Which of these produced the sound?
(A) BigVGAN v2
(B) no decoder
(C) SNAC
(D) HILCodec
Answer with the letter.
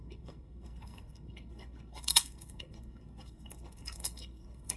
C